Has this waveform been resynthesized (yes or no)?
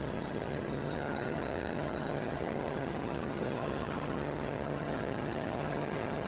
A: yes